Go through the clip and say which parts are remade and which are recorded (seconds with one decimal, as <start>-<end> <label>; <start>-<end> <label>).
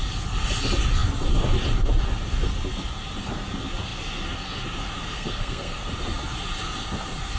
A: 0.0-5.0 recorded; 5.0-5.9 remade; 5.9-7.4 recorded